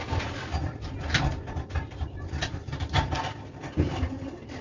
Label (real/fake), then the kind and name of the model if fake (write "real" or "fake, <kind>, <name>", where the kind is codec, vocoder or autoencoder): real